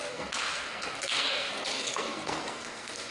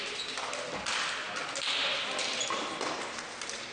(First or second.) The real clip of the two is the second